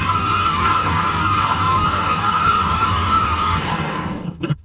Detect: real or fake fake